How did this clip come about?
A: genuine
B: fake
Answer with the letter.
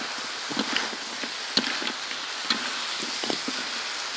A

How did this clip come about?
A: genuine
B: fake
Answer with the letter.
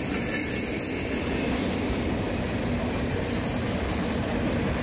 A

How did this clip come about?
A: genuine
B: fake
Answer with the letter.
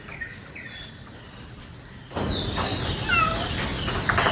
A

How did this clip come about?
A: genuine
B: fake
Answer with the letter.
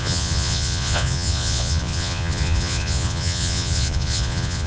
B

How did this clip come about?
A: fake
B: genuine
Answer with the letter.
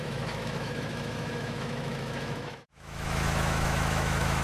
A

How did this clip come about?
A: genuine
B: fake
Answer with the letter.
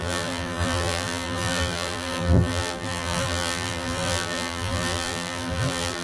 B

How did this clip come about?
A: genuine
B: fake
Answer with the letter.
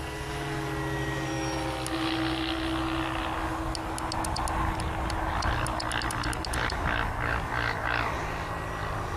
A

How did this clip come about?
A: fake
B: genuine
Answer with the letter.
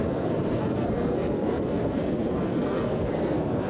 A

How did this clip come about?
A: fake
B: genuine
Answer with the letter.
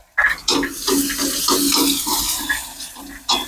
B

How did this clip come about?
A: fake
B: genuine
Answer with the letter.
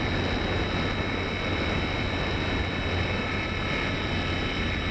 B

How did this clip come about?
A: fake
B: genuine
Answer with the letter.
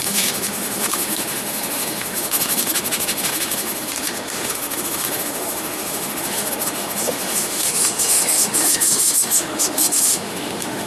A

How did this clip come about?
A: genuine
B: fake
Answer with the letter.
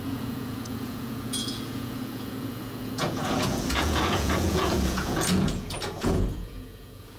B